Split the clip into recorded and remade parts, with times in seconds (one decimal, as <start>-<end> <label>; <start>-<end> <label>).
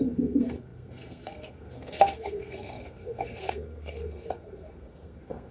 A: 0.0-5.5 remade